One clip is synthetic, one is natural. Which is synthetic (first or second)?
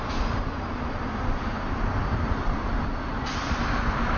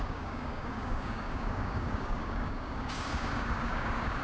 second